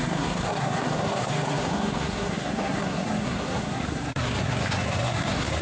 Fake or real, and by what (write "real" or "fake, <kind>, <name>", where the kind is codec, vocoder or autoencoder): fake, codec, SNAC